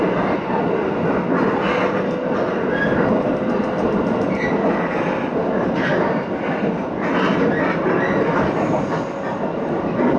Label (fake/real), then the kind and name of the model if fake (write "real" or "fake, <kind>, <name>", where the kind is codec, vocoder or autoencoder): real